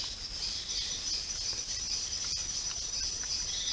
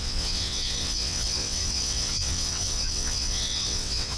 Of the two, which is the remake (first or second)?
second